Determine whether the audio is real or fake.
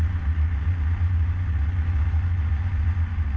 real